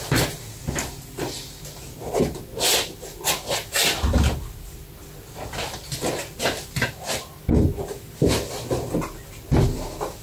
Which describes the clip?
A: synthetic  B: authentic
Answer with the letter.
B